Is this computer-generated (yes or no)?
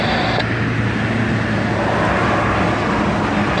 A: no